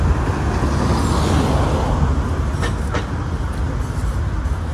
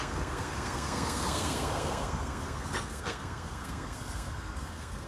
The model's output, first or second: second